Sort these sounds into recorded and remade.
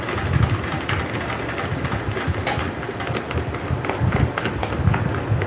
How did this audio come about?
recorded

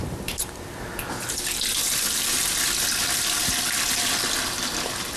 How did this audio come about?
recorded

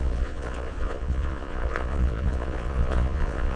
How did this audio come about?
remade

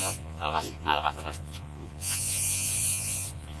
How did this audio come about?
remade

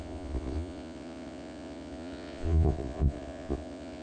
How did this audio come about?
remade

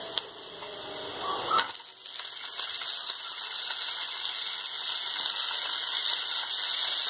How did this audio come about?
recorded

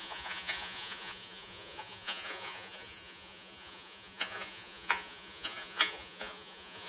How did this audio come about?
remade